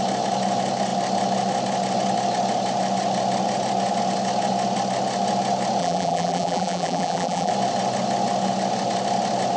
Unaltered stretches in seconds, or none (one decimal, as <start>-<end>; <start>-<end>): 0.0-5.8; 7.5-9.6